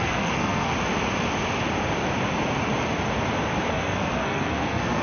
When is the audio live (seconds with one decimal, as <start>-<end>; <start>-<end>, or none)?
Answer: 0.7-3.7